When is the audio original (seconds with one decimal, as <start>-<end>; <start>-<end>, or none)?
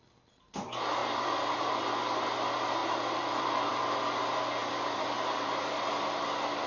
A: 0.0-1.0; 1.9-2.8; 3.7-4.6; 6.1-6.7